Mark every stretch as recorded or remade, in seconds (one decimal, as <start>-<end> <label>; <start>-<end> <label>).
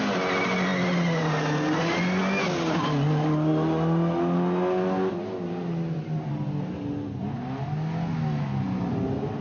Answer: 0.0-9.4 recorded